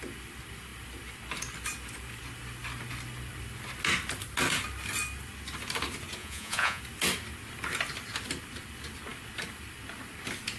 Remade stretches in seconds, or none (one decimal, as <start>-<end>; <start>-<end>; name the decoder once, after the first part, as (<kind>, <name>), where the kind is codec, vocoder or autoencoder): 6.2-6.8 (vocoder, Vocos)